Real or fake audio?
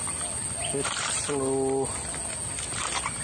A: real